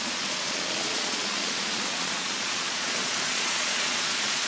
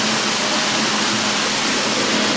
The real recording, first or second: second